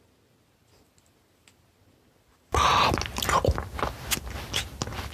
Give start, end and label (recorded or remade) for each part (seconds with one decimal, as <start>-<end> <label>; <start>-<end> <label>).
0.0-5.1 recorded